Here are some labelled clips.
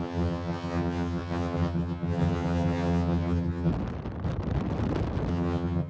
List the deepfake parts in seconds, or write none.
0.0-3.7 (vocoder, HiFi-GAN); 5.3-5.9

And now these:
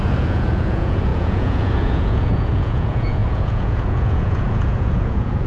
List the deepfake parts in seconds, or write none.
0.0-5.5 (vocoder, Vocos)

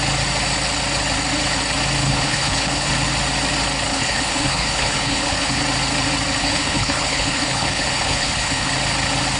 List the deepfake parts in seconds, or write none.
2.0-2.9 (codec, HILCodec); 3.9-5.6; 6.4-8.7

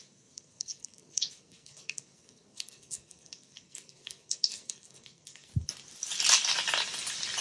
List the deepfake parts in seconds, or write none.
0.0-5.5 (codec, SNAC)

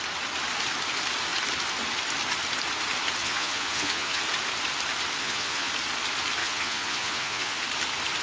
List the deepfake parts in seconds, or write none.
3.2-4.2 (vocoder, Vocos); 5.2-5.7; 6.4-7.6